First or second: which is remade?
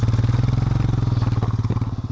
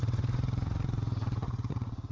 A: second